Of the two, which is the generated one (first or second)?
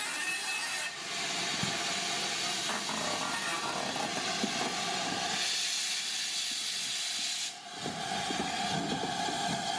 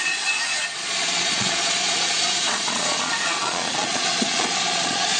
second